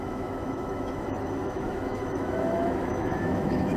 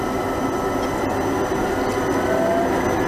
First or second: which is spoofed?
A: first